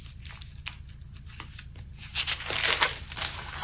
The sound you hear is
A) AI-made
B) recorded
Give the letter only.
B